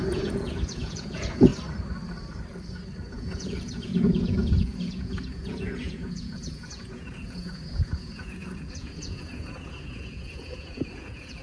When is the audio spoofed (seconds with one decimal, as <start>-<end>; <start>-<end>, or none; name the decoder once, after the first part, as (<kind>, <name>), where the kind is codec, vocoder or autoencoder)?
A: 0.0-1.5 (vocoder, Vocos); 3.1-11.4